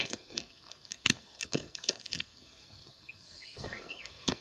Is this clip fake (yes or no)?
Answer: yes